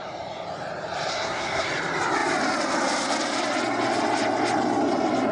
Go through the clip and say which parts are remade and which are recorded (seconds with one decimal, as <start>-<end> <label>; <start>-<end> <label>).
0.0-1.1 recorded; 1.1-1.7 remade; 1.7-5.3 recorded